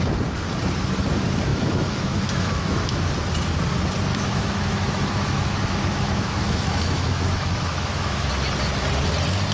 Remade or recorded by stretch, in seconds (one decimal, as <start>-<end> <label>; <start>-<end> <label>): 0.0-1.5 recorded; 1.5-3.0 remade; 3.0-4.1 recorded; 4.1-8.3 remade; 8.3-9.5 recorded

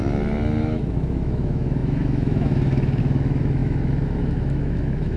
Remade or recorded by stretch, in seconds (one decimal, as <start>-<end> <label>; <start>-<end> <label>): 0.0-0.6 recorded; 0.6-5.2 remade

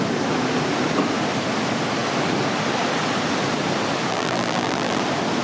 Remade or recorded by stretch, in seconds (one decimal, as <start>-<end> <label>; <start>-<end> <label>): 0.0-4.1 recorded; 4.1-5.0 remade; 5.0-5.4 recorded

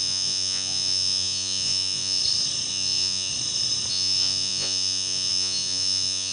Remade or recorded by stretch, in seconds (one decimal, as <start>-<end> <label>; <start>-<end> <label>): 0.0-2.2 remade; 2.2-2.7 recorded; 2.7-3.3 remade; 3.3-3.9 recorded; 3.9-6.3 remade